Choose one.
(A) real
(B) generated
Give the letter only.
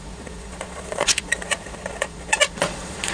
B